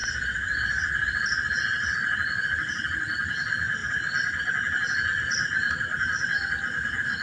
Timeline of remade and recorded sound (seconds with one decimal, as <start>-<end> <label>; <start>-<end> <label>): 0.0-0.9 remade; 0.9-7.2 recorded